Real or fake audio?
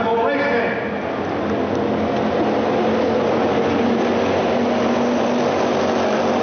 real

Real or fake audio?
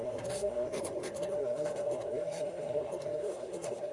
fake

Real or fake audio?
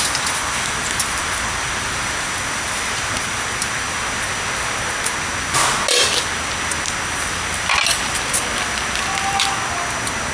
real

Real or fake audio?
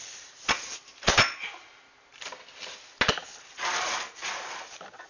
real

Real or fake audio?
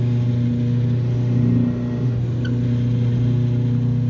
real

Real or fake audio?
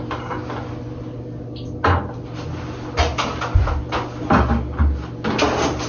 real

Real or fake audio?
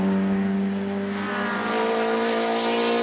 real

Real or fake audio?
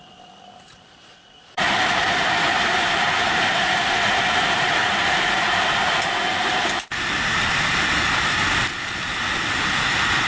fake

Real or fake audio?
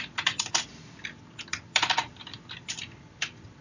fake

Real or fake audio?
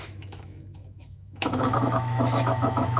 fake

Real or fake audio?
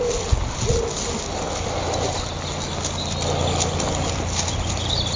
real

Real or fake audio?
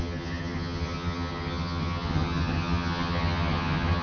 fake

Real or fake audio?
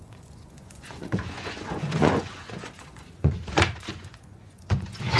fake